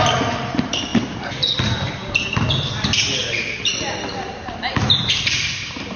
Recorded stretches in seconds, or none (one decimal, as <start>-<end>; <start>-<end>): none

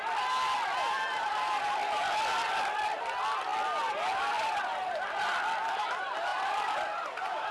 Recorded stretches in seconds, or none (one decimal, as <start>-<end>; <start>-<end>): 0.0-0.8; 1.6-6.3

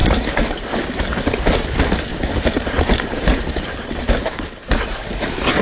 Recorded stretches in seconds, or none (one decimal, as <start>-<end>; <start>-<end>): 1.2-2.1

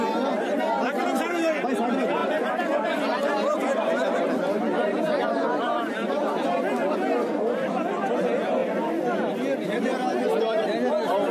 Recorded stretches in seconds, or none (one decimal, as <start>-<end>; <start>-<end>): 0.0-11.3

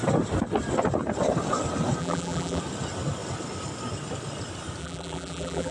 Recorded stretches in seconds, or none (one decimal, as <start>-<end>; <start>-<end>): 0.0-2.0; 2.6-4.8

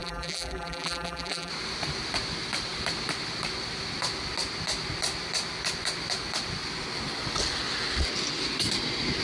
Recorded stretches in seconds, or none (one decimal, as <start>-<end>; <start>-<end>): 1.5-9.2

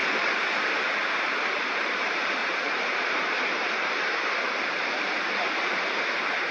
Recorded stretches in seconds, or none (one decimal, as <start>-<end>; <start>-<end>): none

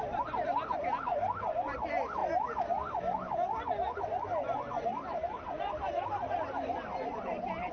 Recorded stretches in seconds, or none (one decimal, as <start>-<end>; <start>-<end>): 0.0-4.9; 6.1-7.7